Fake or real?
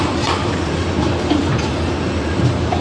fake